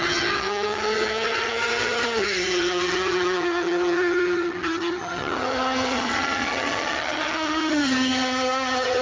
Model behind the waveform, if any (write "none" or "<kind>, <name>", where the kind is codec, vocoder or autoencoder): vocoder, HiFi-GAN